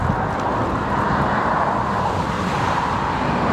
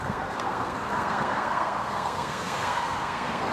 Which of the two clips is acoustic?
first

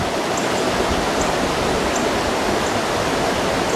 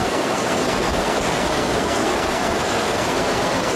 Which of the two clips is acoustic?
first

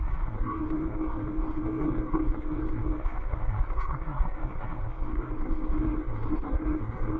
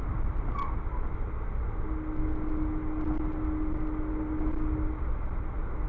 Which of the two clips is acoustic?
second